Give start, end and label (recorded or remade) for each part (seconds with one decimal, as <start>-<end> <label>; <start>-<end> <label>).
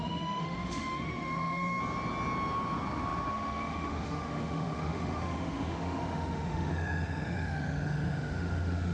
0.0-1.8 remade; 1.8-3.3 recorded; 3.3-8.9 remade